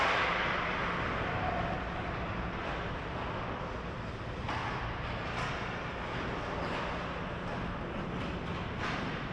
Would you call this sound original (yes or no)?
yes